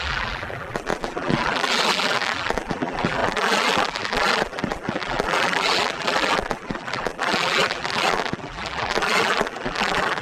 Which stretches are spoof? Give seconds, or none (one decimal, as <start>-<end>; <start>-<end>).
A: 0.0-10.2